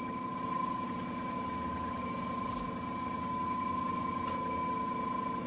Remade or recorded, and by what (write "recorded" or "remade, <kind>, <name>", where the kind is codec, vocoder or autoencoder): recorded